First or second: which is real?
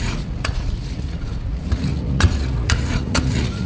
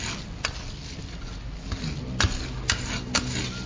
second